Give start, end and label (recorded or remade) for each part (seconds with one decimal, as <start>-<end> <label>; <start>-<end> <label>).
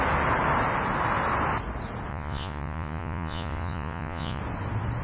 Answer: 0.0-2.1 recorded; 2.1-4.4 remade; 4.4-5.0 recorded